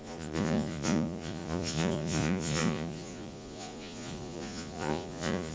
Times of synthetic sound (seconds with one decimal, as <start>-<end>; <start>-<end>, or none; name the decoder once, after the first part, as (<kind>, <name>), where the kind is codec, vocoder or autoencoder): 0.0-5.5 (vocoder, Vocos)